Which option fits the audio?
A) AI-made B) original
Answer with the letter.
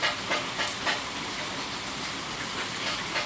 B